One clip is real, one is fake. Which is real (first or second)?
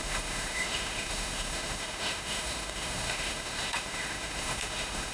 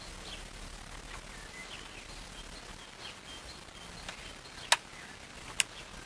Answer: second